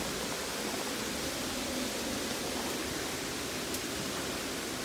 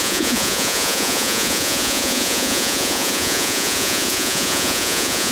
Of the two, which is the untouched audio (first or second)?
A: first